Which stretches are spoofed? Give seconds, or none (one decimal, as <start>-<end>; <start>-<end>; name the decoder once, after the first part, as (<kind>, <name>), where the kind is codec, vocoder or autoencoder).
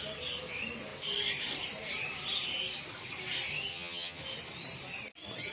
3.7-4.2 (vocoder, HiFi-GAN)